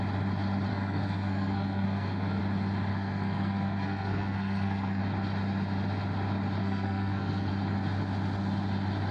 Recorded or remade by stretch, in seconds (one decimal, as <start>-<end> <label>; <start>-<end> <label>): 0.0-0.7 recorded; 0.7-2.4 remade; 2.4-2.9 recorded; 2.9-5.0 remade; 5.0-6.6 recorded; 6.6-7.5 remade; 7.5-9.1 recorded